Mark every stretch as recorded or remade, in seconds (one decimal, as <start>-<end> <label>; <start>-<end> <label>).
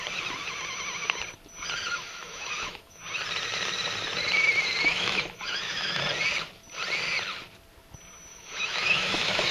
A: 0.0-1.9 recorded; 1.9-3.0 remade; 3.0-4.9 recorded; 4.9-6.0 remade; 6.0-8.3 recorded; 8.3-9.5 remade